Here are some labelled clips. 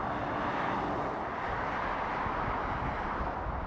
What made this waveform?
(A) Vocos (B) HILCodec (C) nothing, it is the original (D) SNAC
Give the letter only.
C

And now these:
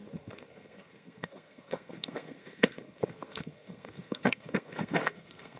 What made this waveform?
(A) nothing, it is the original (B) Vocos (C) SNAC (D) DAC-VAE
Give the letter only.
C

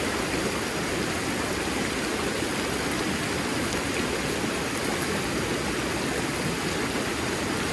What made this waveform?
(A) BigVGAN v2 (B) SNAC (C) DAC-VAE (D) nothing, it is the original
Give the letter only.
D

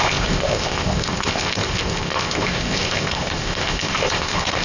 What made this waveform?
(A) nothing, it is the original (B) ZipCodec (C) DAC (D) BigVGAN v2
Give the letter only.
B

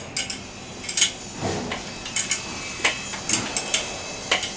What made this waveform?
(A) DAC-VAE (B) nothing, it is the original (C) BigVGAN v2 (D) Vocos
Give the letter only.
B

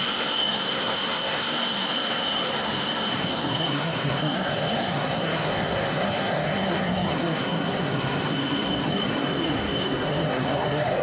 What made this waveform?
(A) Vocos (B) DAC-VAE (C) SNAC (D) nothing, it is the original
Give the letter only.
C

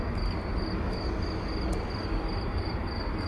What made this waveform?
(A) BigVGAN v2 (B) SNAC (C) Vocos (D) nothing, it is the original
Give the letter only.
D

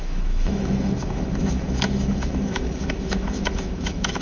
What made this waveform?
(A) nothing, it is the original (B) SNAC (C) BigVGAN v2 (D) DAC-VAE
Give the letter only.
D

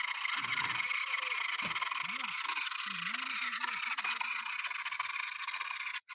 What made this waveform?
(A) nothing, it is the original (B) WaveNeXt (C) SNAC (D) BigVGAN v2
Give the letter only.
A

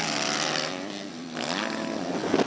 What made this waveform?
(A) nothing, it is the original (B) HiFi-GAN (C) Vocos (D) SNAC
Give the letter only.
A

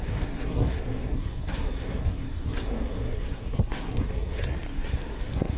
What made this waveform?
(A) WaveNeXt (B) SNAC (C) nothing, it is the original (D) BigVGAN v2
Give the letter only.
B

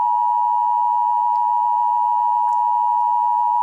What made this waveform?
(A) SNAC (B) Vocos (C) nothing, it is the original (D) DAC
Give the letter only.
C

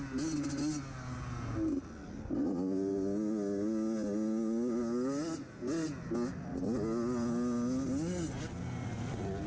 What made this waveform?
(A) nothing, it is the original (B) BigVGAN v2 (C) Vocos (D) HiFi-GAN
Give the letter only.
A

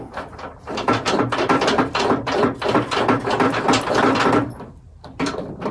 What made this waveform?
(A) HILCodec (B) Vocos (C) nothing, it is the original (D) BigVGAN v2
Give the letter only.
D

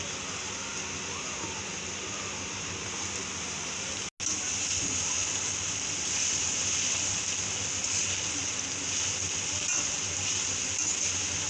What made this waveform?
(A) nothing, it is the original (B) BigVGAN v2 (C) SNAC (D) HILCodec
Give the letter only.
A